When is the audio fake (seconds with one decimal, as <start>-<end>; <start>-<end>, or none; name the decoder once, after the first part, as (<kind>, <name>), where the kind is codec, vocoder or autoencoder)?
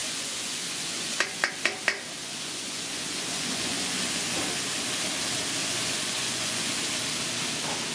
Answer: 0.0-1.5 (vocoder, Vocos); 2.2-4.4; 5.6-6.7